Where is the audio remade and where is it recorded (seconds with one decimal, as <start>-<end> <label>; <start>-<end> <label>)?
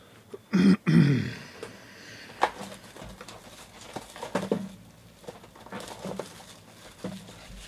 0.0-7.7 recorded